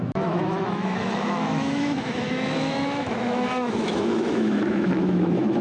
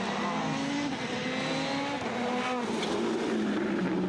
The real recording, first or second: second